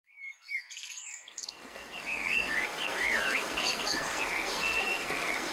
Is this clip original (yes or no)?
no